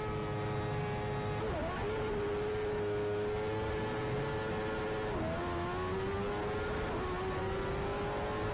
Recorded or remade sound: recorded